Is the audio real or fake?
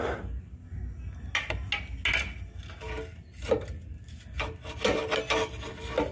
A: real